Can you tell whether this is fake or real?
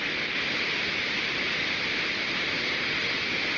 real